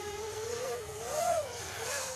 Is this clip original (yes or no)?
no